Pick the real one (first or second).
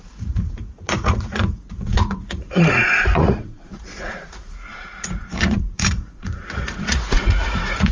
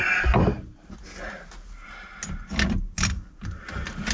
second